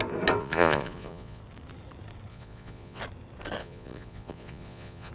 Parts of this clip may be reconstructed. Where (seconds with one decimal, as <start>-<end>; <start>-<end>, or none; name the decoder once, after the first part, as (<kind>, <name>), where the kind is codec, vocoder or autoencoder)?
0.4-1.4 (vocoder, Vocos); 2.3-3.0; 3.6-5.1